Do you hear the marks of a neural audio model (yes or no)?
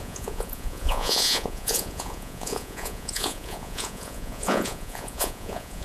yes